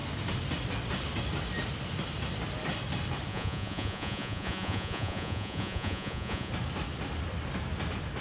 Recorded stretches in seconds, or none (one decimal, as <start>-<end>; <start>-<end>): 0.0-3.3; 6.5-8.2

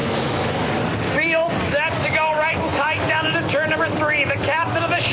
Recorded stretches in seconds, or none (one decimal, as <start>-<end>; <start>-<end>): 0.7-5.1